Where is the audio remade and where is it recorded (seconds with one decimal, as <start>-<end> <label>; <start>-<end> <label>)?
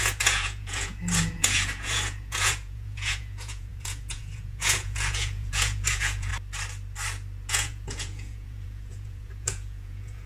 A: 0.0-6.3 remade; 6.3-7.5 recorded; 7.5-10.3 remade